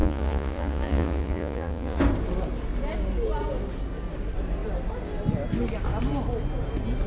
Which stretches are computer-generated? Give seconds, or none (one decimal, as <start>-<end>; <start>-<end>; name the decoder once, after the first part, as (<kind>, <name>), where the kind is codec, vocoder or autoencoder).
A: 0.0-2.0 (vocoder, Vocos)